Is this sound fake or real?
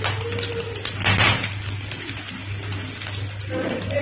real